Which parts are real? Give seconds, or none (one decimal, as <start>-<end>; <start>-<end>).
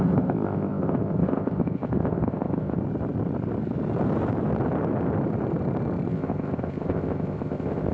2.8-6.1